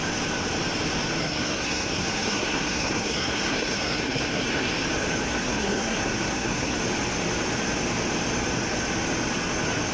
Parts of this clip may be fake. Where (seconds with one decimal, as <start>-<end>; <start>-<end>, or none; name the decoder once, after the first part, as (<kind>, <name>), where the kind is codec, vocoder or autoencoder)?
1.2-4.7 (codec, SNAC); 5.3-6.8